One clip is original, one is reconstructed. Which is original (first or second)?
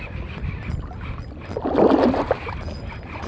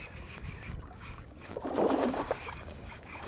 first